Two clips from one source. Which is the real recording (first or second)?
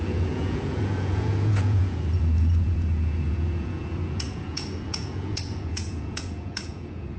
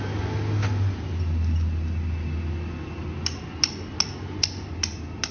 second